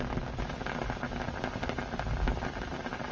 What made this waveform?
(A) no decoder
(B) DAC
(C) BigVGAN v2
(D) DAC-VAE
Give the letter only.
A